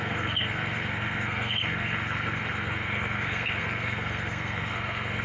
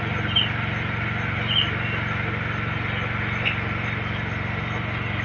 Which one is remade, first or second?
first